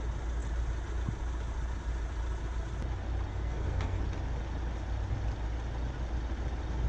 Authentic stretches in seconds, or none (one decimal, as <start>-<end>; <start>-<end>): 0.0-3.3; 4.0-6.9